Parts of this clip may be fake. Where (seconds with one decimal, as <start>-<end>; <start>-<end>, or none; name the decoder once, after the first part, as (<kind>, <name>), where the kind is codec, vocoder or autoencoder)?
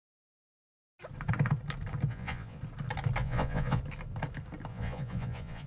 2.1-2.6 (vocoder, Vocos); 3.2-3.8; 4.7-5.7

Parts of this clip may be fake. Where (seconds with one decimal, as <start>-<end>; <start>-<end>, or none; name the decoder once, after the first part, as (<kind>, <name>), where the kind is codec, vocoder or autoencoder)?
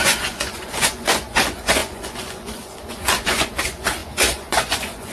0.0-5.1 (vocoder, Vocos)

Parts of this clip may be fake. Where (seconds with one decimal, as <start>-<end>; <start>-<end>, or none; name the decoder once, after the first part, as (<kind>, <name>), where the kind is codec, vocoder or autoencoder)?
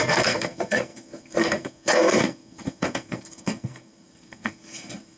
0.0-5.2 (codec, SNAC)